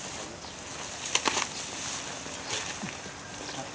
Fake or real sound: real